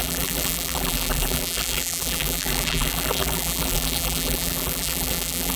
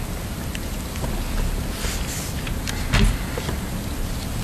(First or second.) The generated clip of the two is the first